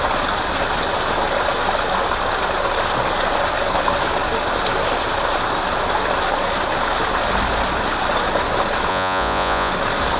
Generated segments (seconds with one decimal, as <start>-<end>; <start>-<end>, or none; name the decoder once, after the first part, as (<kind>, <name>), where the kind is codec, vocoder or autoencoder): 8.9-9.7 (vocoder, Vocos)